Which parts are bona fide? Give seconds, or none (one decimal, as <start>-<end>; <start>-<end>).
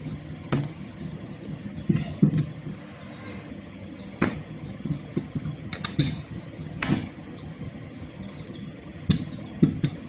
2.8-3.5